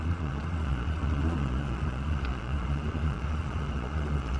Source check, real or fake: fake